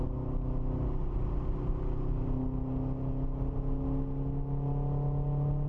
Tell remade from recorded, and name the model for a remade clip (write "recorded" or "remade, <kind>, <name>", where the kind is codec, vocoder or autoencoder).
recorded